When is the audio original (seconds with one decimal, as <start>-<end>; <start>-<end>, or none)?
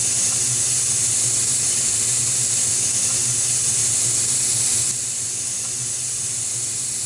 0.0-7.1